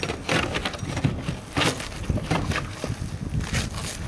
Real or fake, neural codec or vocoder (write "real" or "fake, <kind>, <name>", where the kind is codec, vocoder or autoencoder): real